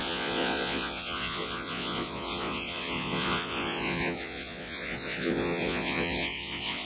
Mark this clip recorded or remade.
remade